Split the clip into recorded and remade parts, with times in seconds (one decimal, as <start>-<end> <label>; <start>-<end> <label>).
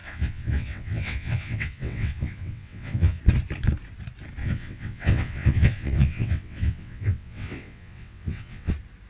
0.0-3.2 remade; 3.2-4.4 recorded; 4.4-8.7 remade; 8.7-9.1 recorded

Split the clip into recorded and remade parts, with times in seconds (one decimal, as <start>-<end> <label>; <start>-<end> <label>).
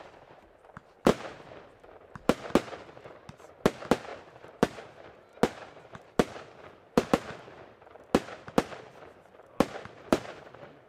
0.0-4.1 recorded; 4.1-4.8 remade; 4.8-10.9 recorded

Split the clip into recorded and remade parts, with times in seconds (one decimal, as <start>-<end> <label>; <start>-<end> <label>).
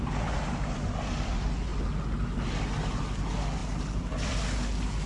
0.0-5.1 recorded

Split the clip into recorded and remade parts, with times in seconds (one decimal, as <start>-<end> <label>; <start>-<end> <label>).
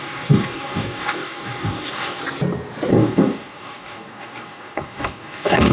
0.0-2.2 remade; 2.2-2.9 recorded; 2.9-5.7 remade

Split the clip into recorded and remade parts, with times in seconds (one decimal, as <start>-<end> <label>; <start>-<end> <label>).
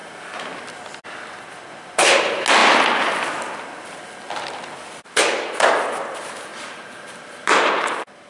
0.0-0.6 remade; 0.6-6.5 recorded; 6.5-8.3 remade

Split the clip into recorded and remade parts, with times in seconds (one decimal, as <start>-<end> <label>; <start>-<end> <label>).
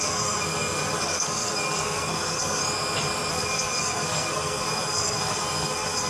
0.0-2.6 remade; 2.6-3.3 recorded; 3.3-6.1 remade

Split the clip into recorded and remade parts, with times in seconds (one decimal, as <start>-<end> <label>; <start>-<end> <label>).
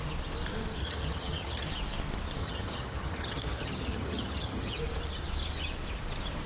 0.0-0.8 recorded; 0.8-1.7 remade; 1.7-2.4 recorded; 2.4-4.8 remade; 4.8-6.5 recorded